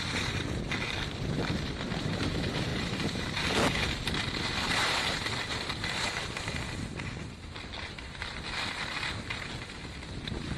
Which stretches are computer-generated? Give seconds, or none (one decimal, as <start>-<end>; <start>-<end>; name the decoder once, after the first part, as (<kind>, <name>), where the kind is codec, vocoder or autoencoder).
none